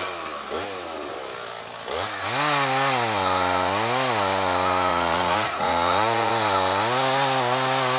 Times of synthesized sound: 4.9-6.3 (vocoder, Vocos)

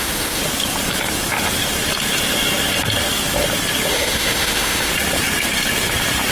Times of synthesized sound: 0.0-0.4 (autoencoder, DAC-VAE); 3.9-4.9

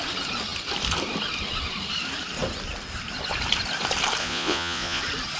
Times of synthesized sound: 4.2-5.0 (vocoder, Vocos)

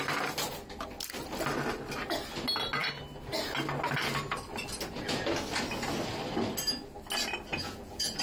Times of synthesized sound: 7.5-8.2 (vocoder, Vocos)